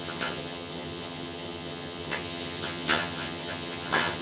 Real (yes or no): no